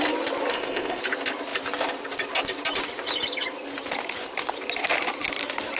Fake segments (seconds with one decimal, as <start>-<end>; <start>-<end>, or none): 0.5-1.0